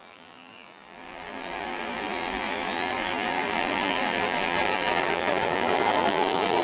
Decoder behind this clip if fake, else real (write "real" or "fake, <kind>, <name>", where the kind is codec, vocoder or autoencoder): fake, vocoder, BigVGAN v2